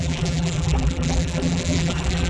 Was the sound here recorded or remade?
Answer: remade